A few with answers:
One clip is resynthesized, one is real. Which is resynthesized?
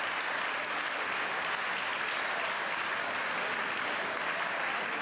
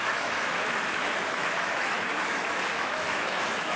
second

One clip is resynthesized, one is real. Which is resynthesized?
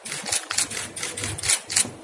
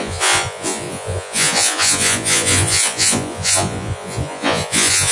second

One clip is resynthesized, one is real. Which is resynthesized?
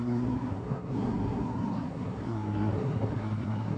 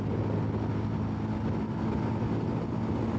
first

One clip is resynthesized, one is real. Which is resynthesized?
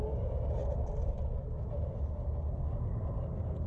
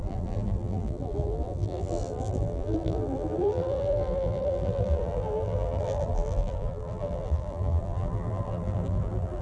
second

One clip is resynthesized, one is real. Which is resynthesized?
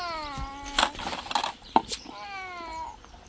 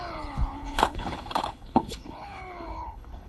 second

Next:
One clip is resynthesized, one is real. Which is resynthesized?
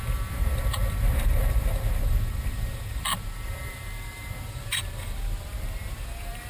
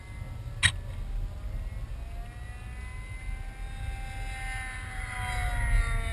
first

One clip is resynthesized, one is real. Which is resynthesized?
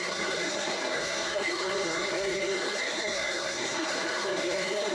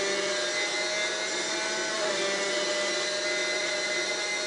first